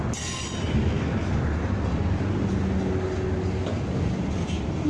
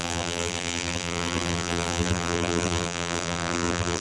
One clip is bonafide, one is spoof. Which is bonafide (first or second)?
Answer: first